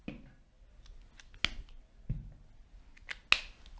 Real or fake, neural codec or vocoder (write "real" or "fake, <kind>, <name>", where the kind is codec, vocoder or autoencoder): real